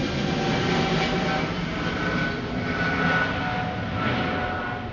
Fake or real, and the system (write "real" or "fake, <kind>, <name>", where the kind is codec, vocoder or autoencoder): real